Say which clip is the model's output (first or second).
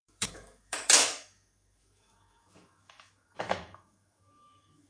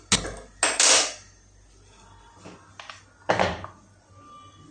first